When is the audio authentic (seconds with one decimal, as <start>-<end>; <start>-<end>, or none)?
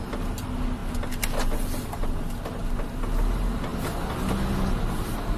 0.0-5.4